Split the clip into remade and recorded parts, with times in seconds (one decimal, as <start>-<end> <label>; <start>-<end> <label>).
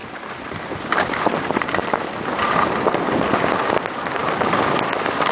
0.0-5.3 recorded